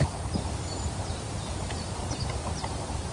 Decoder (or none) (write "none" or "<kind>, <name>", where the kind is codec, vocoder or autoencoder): none